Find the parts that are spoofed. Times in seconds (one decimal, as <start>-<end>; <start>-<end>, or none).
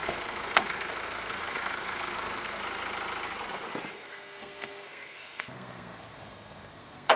0.0-2.6; 3.9-7.2